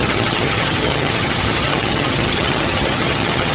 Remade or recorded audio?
remade